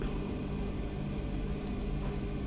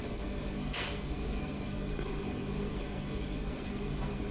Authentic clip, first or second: first